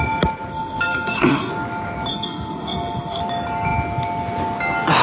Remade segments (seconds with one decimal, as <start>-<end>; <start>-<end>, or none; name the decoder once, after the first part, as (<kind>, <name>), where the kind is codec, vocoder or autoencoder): 0.5-1.5 (codec, SNAC); 2.1-3.2